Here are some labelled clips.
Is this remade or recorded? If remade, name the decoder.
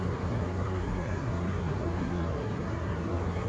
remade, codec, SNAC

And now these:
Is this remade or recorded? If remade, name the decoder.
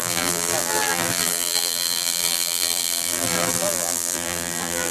remade, vocoder, BigVGAN v2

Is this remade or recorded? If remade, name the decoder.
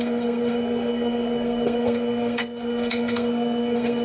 remade, codec, SNAC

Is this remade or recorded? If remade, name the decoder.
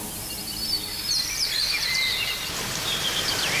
remade, vocoder, BigVGAN v2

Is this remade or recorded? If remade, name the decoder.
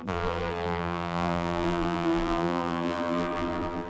remade, vocoder, BigVGAN v2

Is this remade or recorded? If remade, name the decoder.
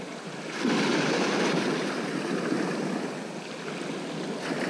recorded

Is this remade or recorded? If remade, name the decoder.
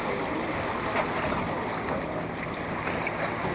recorded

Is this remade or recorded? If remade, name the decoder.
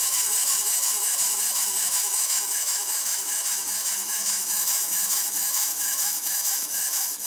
remade, autoencoder, DAC-VAE